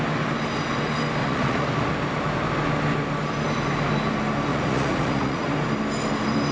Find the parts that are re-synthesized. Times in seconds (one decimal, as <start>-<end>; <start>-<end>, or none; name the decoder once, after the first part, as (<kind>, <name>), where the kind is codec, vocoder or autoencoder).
1.2-1.7 (vocoder, Vocos); 4.5-5.5